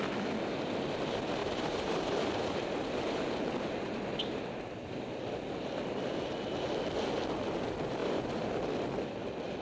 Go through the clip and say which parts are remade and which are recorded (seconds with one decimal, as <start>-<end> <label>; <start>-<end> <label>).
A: 0.0-1.4 recorded; 1.4-2.2 remade; 2.2-8.0 recorded; 8.0-8.5 remade; 8.5-9.6 recorded